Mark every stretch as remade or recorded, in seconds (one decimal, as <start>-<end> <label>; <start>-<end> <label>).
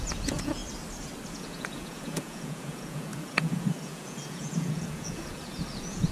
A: 0.0-0.6 remade; 0.6-1.3 recorded; 1.3-6.1 remade